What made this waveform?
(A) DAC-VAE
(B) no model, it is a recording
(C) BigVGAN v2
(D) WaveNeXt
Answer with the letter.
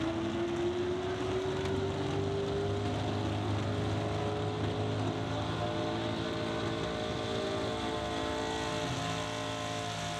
B